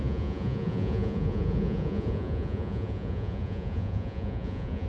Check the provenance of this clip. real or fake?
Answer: fake